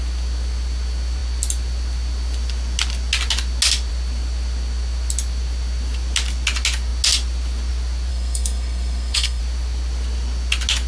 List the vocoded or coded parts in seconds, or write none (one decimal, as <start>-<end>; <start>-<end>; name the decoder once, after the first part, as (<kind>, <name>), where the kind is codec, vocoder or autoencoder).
8.1-9.4 (codec, SNAC)